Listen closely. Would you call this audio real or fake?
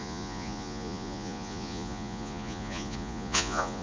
fake